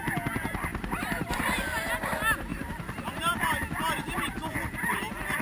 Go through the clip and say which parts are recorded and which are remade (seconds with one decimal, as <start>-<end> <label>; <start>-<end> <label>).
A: 0.0-0.7 recorded; 0.7-1.9 remade; 1.9-2.5 recorded; 2.5-3.4 remade; 3.4-5.4 recorded